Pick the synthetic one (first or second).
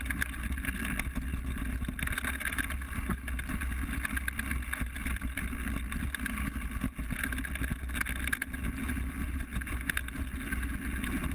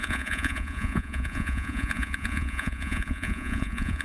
second